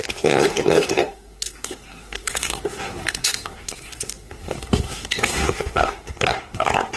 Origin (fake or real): fake